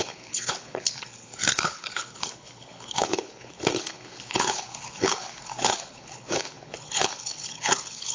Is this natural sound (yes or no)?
no